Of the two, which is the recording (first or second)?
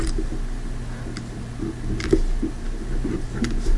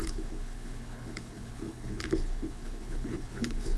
first